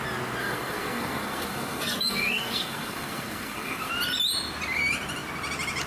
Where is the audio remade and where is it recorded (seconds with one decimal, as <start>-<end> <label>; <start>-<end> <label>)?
0.0-0.4 recorded; 0.4-3.9 remade; 3.9-5.9 recorded